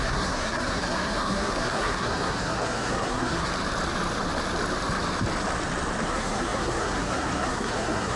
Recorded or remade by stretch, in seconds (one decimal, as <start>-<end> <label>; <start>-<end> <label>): 0.0-3.5 remade; 3.5-6.1 recorded; 6.1-8.2 remade